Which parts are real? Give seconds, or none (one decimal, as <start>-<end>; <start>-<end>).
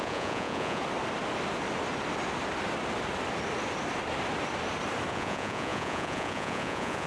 0.8-5.1